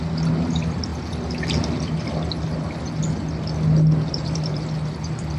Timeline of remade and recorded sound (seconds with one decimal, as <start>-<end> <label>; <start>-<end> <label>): 0.0-0.9 remade; 0.9-4.1 recorded; 4.1-5.4 remade